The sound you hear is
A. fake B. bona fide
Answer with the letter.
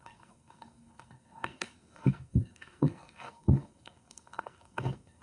A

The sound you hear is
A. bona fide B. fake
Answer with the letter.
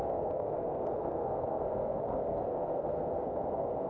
B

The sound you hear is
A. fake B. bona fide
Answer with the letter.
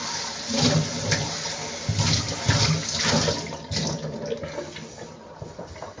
B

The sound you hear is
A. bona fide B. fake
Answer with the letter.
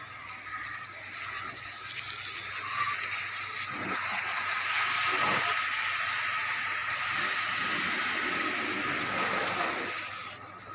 A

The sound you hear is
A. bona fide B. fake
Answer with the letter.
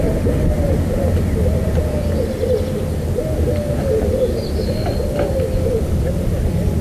A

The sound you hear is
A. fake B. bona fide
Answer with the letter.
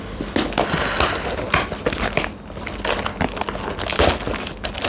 B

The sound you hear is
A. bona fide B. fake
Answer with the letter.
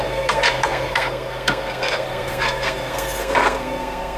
B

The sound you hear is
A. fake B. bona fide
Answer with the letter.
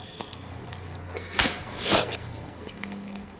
A